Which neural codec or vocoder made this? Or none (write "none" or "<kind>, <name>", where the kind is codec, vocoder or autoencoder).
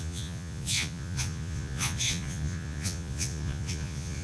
vocoder, Vocos